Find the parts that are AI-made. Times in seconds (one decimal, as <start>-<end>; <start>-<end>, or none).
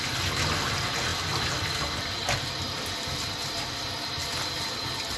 1.1-4.2